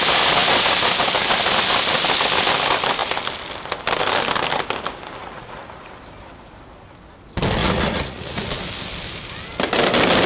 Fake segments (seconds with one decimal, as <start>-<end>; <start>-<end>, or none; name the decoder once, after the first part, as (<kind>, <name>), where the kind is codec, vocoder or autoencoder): 5.2-5.9 (vocoder, Vocos); 7.6-8.4